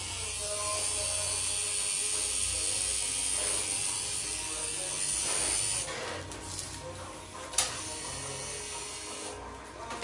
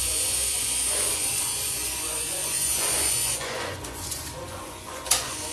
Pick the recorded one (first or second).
first